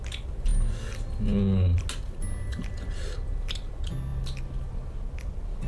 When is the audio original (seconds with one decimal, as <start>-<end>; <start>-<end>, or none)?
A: 0.0-5.7